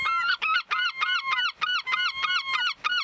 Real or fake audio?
real